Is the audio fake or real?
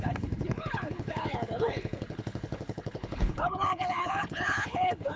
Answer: fake